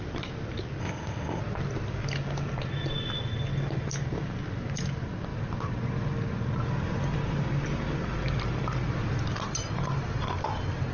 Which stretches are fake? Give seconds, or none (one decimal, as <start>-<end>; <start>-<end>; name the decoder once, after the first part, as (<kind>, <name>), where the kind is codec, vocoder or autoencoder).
0.8-1.4 (codec, ZipCodec)